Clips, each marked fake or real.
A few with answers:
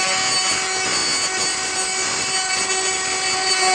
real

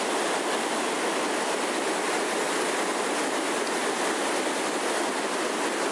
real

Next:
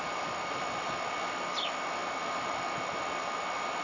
real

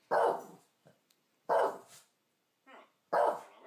real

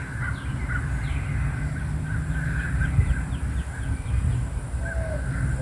real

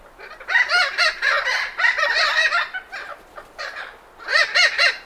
real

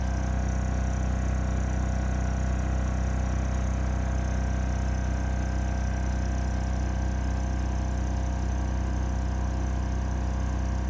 real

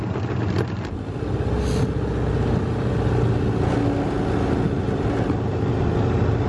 real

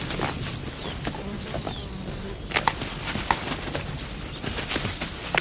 real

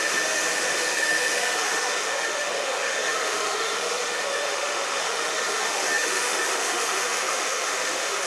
fake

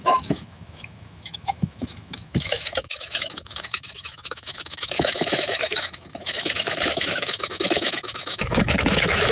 fake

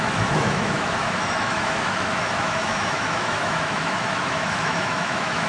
fake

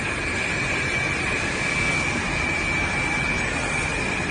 real